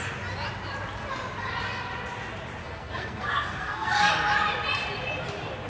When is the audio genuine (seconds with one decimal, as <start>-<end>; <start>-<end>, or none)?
0.0-2.6; 4.1-5.7